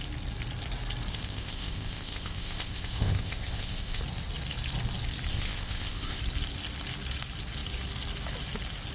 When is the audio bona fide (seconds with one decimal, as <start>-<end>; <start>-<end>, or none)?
0.0-1.1; 4.0-5.3; 6.2-8.9